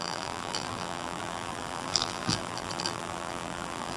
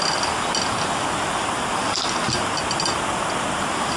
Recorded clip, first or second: second